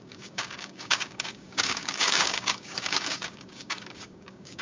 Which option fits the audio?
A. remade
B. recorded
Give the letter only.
A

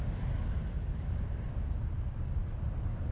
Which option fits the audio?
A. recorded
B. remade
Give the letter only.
A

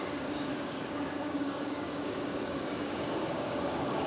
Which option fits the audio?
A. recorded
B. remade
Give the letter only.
B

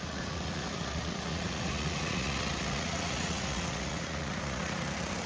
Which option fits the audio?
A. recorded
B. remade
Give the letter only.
B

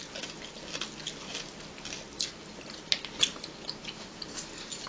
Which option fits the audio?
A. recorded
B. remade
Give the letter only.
A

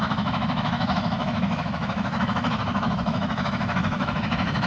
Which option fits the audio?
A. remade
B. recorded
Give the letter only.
A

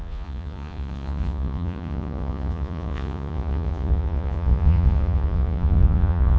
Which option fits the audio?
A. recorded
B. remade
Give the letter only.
B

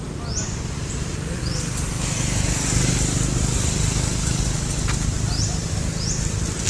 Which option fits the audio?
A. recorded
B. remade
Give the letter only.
A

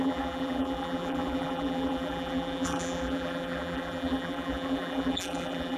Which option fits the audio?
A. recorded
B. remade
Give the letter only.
B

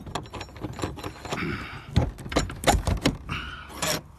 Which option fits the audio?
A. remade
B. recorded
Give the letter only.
B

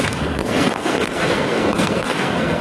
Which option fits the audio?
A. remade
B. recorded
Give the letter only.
A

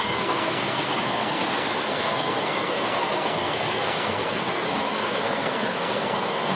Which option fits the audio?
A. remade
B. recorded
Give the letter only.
A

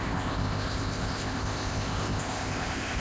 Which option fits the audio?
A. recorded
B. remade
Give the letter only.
B